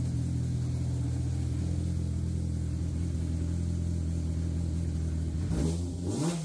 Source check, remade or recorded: recorded